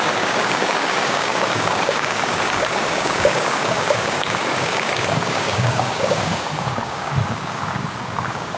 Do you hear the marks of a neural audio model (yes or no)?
yes